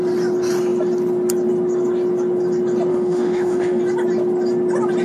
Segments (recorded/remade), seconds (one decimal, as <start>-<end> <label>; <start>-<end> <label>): 0.0-2.9 recorded; 2.9-3.8 remade; 3.8-5.0 recorded